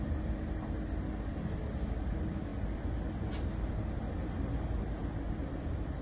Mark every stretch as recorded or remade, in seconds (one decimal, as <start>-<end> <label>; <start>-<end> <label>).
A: 0.0-6.0 recorded